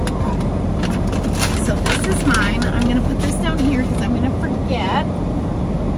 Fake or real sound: real